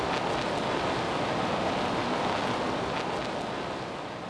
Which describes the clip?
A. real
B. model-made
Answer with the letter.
A